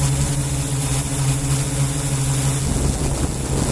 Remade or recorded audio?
recorded